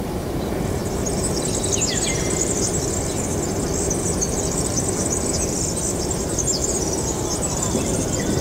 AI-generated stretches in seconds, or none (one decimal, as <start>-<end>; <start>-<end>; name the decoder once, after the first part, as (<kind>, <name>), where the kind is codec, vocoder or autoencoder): none